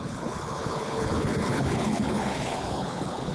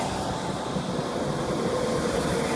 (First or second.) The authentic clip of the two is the second